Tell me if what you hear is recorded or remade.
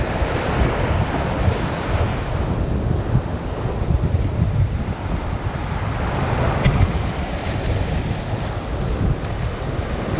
recorded